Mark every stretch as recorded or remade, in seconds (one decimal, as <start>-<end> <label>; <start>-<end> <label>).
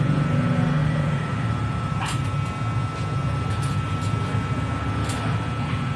0.0-0.8 recorded; 0.8-2.3 remade; 2.3-6.0 recorded